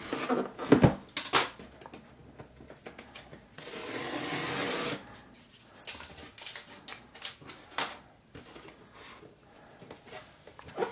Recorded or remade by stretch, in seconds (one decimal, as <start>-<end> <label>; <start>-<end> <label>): 0.0-10.9 recorded